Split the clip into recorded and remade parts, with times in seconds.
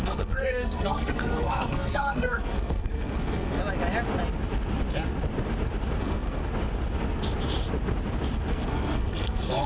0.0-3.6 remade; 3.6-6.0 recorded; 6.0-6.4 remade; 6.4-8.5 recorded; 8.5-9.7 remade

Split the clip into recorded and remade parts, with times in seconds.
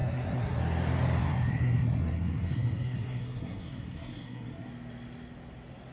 0.0-0.6 remade; 0.6-1.2 recorded; 1.2-4.7 remade; 4.7-5.9 recorded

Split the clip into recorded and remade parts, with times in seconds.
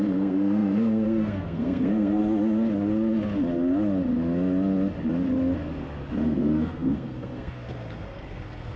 0.0-2.2 remade; 2.2-6.1 recorded; 6.1-8.8 remade